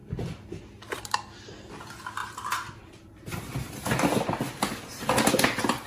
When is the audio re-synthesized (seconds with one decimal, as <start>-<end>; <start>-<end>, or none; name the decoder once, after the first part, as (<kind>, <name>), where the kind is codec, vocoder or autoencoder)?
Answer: 2.2-5.9 (vocoder, BigVGAN v2)